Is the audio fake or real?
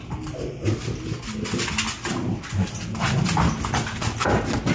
real